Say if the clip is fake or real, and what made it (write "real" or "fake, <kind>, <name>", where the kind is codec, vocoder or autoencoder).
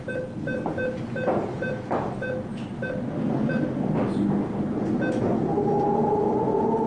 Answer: real